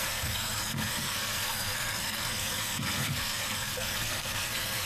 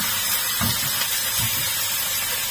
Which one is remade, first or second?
first